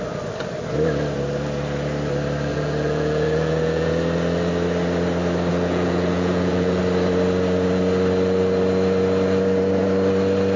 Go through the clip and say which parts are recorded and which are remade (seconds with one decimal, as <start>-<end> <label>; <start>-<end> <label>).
0.0-2.5 recorded; 2.5-3.9 remade; 3.9-5.5 recorded; 5.5-6.8 remade; 6.8-10.6 recorded